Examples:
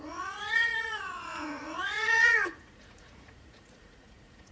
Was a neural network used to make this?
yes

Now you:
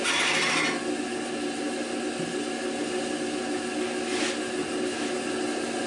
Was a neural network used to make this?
no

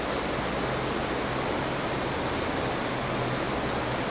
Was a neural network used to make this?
no